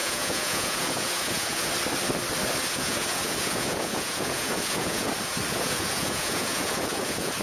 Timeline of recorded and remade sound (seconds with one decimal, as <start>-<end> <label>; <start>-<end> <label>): 0.0-1.7 remade; 1.7-2.6 recorded; 2.6-5.1 remade; 5.1-5.5 recorded; 5.5-7.4 remade